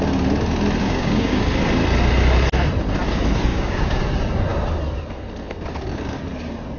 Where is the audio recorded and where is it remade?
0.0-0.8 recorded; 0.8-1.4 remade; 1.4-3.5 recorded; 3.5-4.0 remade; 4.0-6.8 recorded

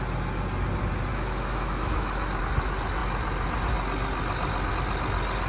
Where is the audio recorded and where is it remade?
0.0-1.1 recorded; 1.1-2.4 remade; 2.4-5.5 recorded

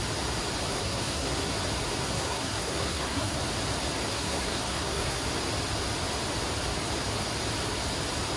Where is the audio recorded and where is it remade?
0.0-0.7 recorded; 0.7-1.5 remade; 1.5-2.0 recorded; 2.0-3.4 remade; 3.4-4.1 recorded; 4.1-5.2 remade; 5.2-8.4 recorded